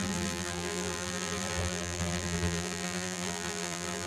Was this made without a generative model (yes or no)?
no